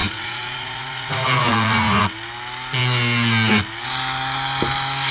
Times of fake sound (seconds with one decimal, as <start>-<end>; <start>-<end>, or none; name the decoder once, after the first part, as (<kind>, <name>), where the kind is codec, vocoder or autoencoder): 0.0-2.0 (vocoder, Vocos)